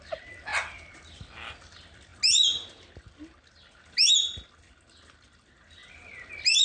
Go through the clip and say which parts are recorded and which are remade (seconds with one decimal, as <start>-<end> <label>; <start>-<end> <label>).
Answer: 0.0-6.6 recorded